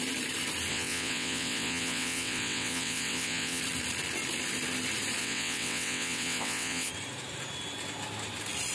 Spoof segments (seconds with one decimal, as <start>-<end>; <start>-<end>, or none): 0.7-3.6; 5.2-6.9